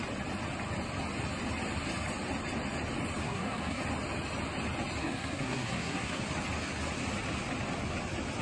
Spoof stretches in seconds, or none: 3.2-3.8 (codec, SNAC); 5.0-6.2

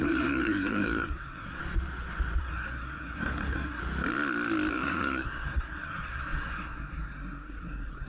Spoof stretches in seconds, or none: 0.0-1.6 (codec, SNAC); 2.4-3.8; 4.7-8.1